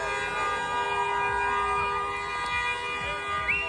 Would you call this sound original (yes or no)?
yes